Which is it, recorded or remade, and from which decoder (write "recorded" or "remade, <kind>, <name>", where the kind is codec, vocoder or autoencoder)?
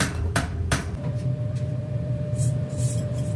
remade, vocoder, BigVGAN v2